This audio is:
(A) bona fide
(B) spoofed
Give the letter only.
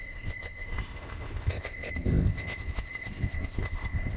B